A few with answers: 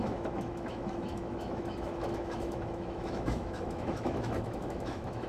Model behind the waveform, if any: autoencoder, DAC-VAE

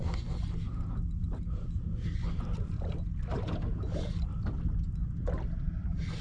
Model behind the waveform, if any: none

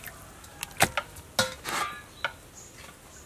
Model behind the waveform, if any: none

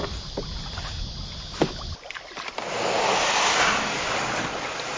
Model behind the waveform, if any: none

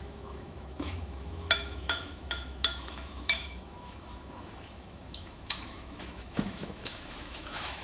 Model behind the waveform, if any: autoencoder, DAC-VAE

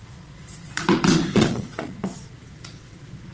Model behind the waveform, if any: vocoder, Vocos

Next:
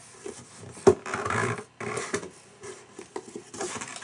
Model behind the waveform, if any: none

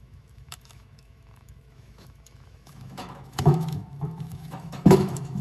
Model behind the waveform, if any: autoencoder, DAC-VAE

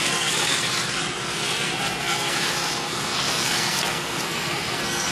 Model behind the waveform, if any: codec, SNAC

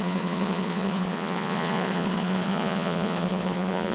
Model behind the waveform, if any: vocoder, Vocos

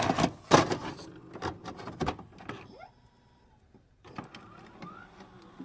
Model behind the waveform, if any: none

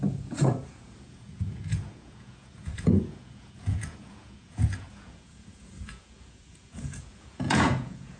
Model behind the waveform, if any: vocoder, Vocos